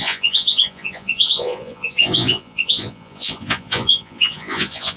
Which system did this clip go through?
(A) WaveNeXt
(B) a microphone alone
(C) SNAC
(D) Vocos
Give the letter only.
D